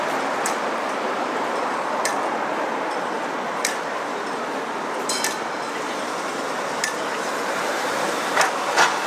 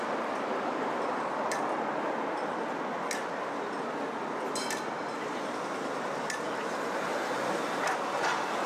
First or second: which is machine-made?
first